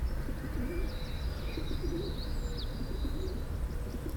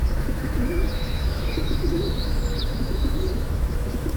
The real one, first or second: first